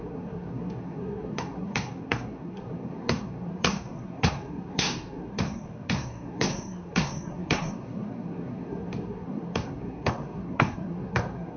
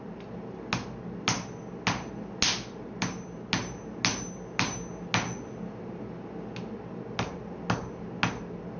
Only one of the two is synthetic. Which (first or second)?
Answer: first